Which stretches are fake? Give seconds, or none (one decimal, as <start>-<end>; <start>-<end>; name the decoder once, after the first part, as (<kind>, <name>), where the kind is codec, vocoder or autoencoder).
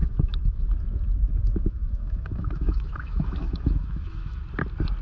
0.0-0.6 (autoencoder, DAC-VAE); 1.4-4.4